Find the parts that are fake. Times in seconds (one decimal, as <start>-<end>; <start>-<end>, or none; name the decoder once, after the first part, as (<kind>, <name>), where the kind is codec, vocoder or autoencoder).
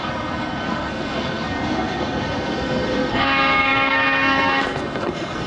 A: 0.0-5.5 (codec, SNAC)